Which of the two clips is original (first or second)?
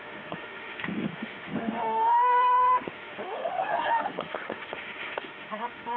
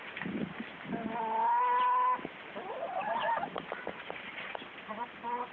second